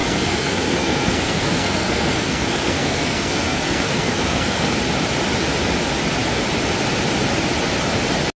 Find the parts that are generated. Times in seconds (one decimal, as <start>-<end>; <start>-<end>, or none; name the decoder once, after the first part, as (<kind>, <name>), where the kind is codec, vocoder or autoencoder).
0.0-4.7 (codec, SNAC)